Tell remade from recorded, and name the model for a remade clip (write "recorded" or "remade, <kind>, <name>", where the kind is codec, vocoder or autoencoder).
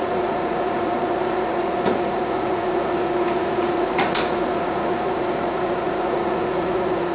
remade, vocoder, Vocos